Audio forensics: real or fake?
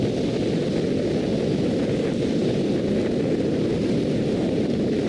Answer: real